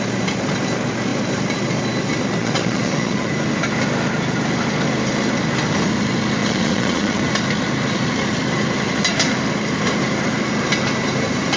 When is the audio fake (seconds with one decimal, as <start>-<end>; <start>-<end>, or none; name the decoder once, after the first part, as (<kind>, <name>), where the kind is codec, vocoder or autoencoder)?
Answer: 2.4-3.3 (vocoder, Vocos); 6.4-7.2